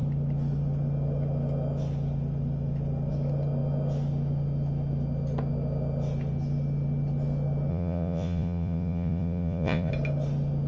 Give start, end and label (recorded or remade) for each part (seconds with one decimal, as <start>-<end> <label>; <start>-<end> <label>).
0.0-7.7 recorded; 7.7-9.9 remade; 9.9-10.7 recorded